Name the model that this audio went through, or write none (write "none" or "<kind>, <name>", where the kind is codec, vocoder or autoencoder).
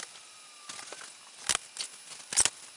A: none